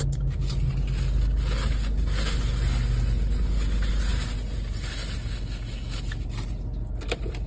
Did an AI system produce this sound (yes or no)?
no